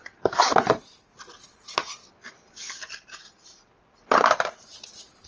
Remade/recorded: recorded